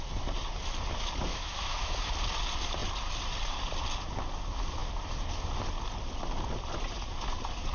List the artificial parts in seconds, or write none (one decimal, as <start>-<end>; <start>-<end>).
1.3-2.1